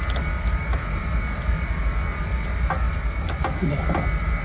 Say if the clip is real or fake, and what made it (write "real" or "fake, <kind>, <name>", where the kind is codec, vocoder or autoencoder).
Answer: real